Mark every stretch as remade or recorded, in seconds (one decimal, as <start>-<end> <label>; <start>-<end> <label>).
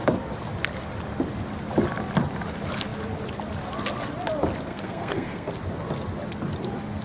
0.0-4.7 recorded; 4.7-5.5 remade; 5.5-7.0 recorded